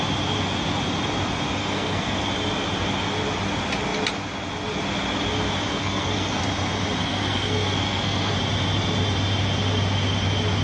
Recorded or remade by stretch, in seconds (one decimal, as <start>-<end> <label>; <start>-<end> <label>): 0.0-1.6 recorded; 1.6-2.3 remade; 2.3-5.7 recorded; 5.7-6.4 remade; 6.4-7.0 recorded; 7.0-8.3 remade; 8.3-10.6 recorded